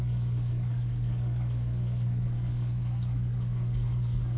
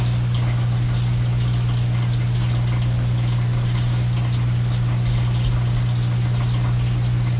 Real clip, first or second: second